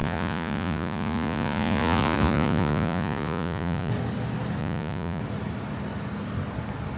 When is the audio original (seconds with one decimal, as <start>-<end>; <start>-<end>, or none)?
3.9-4.6; 5.2-7.0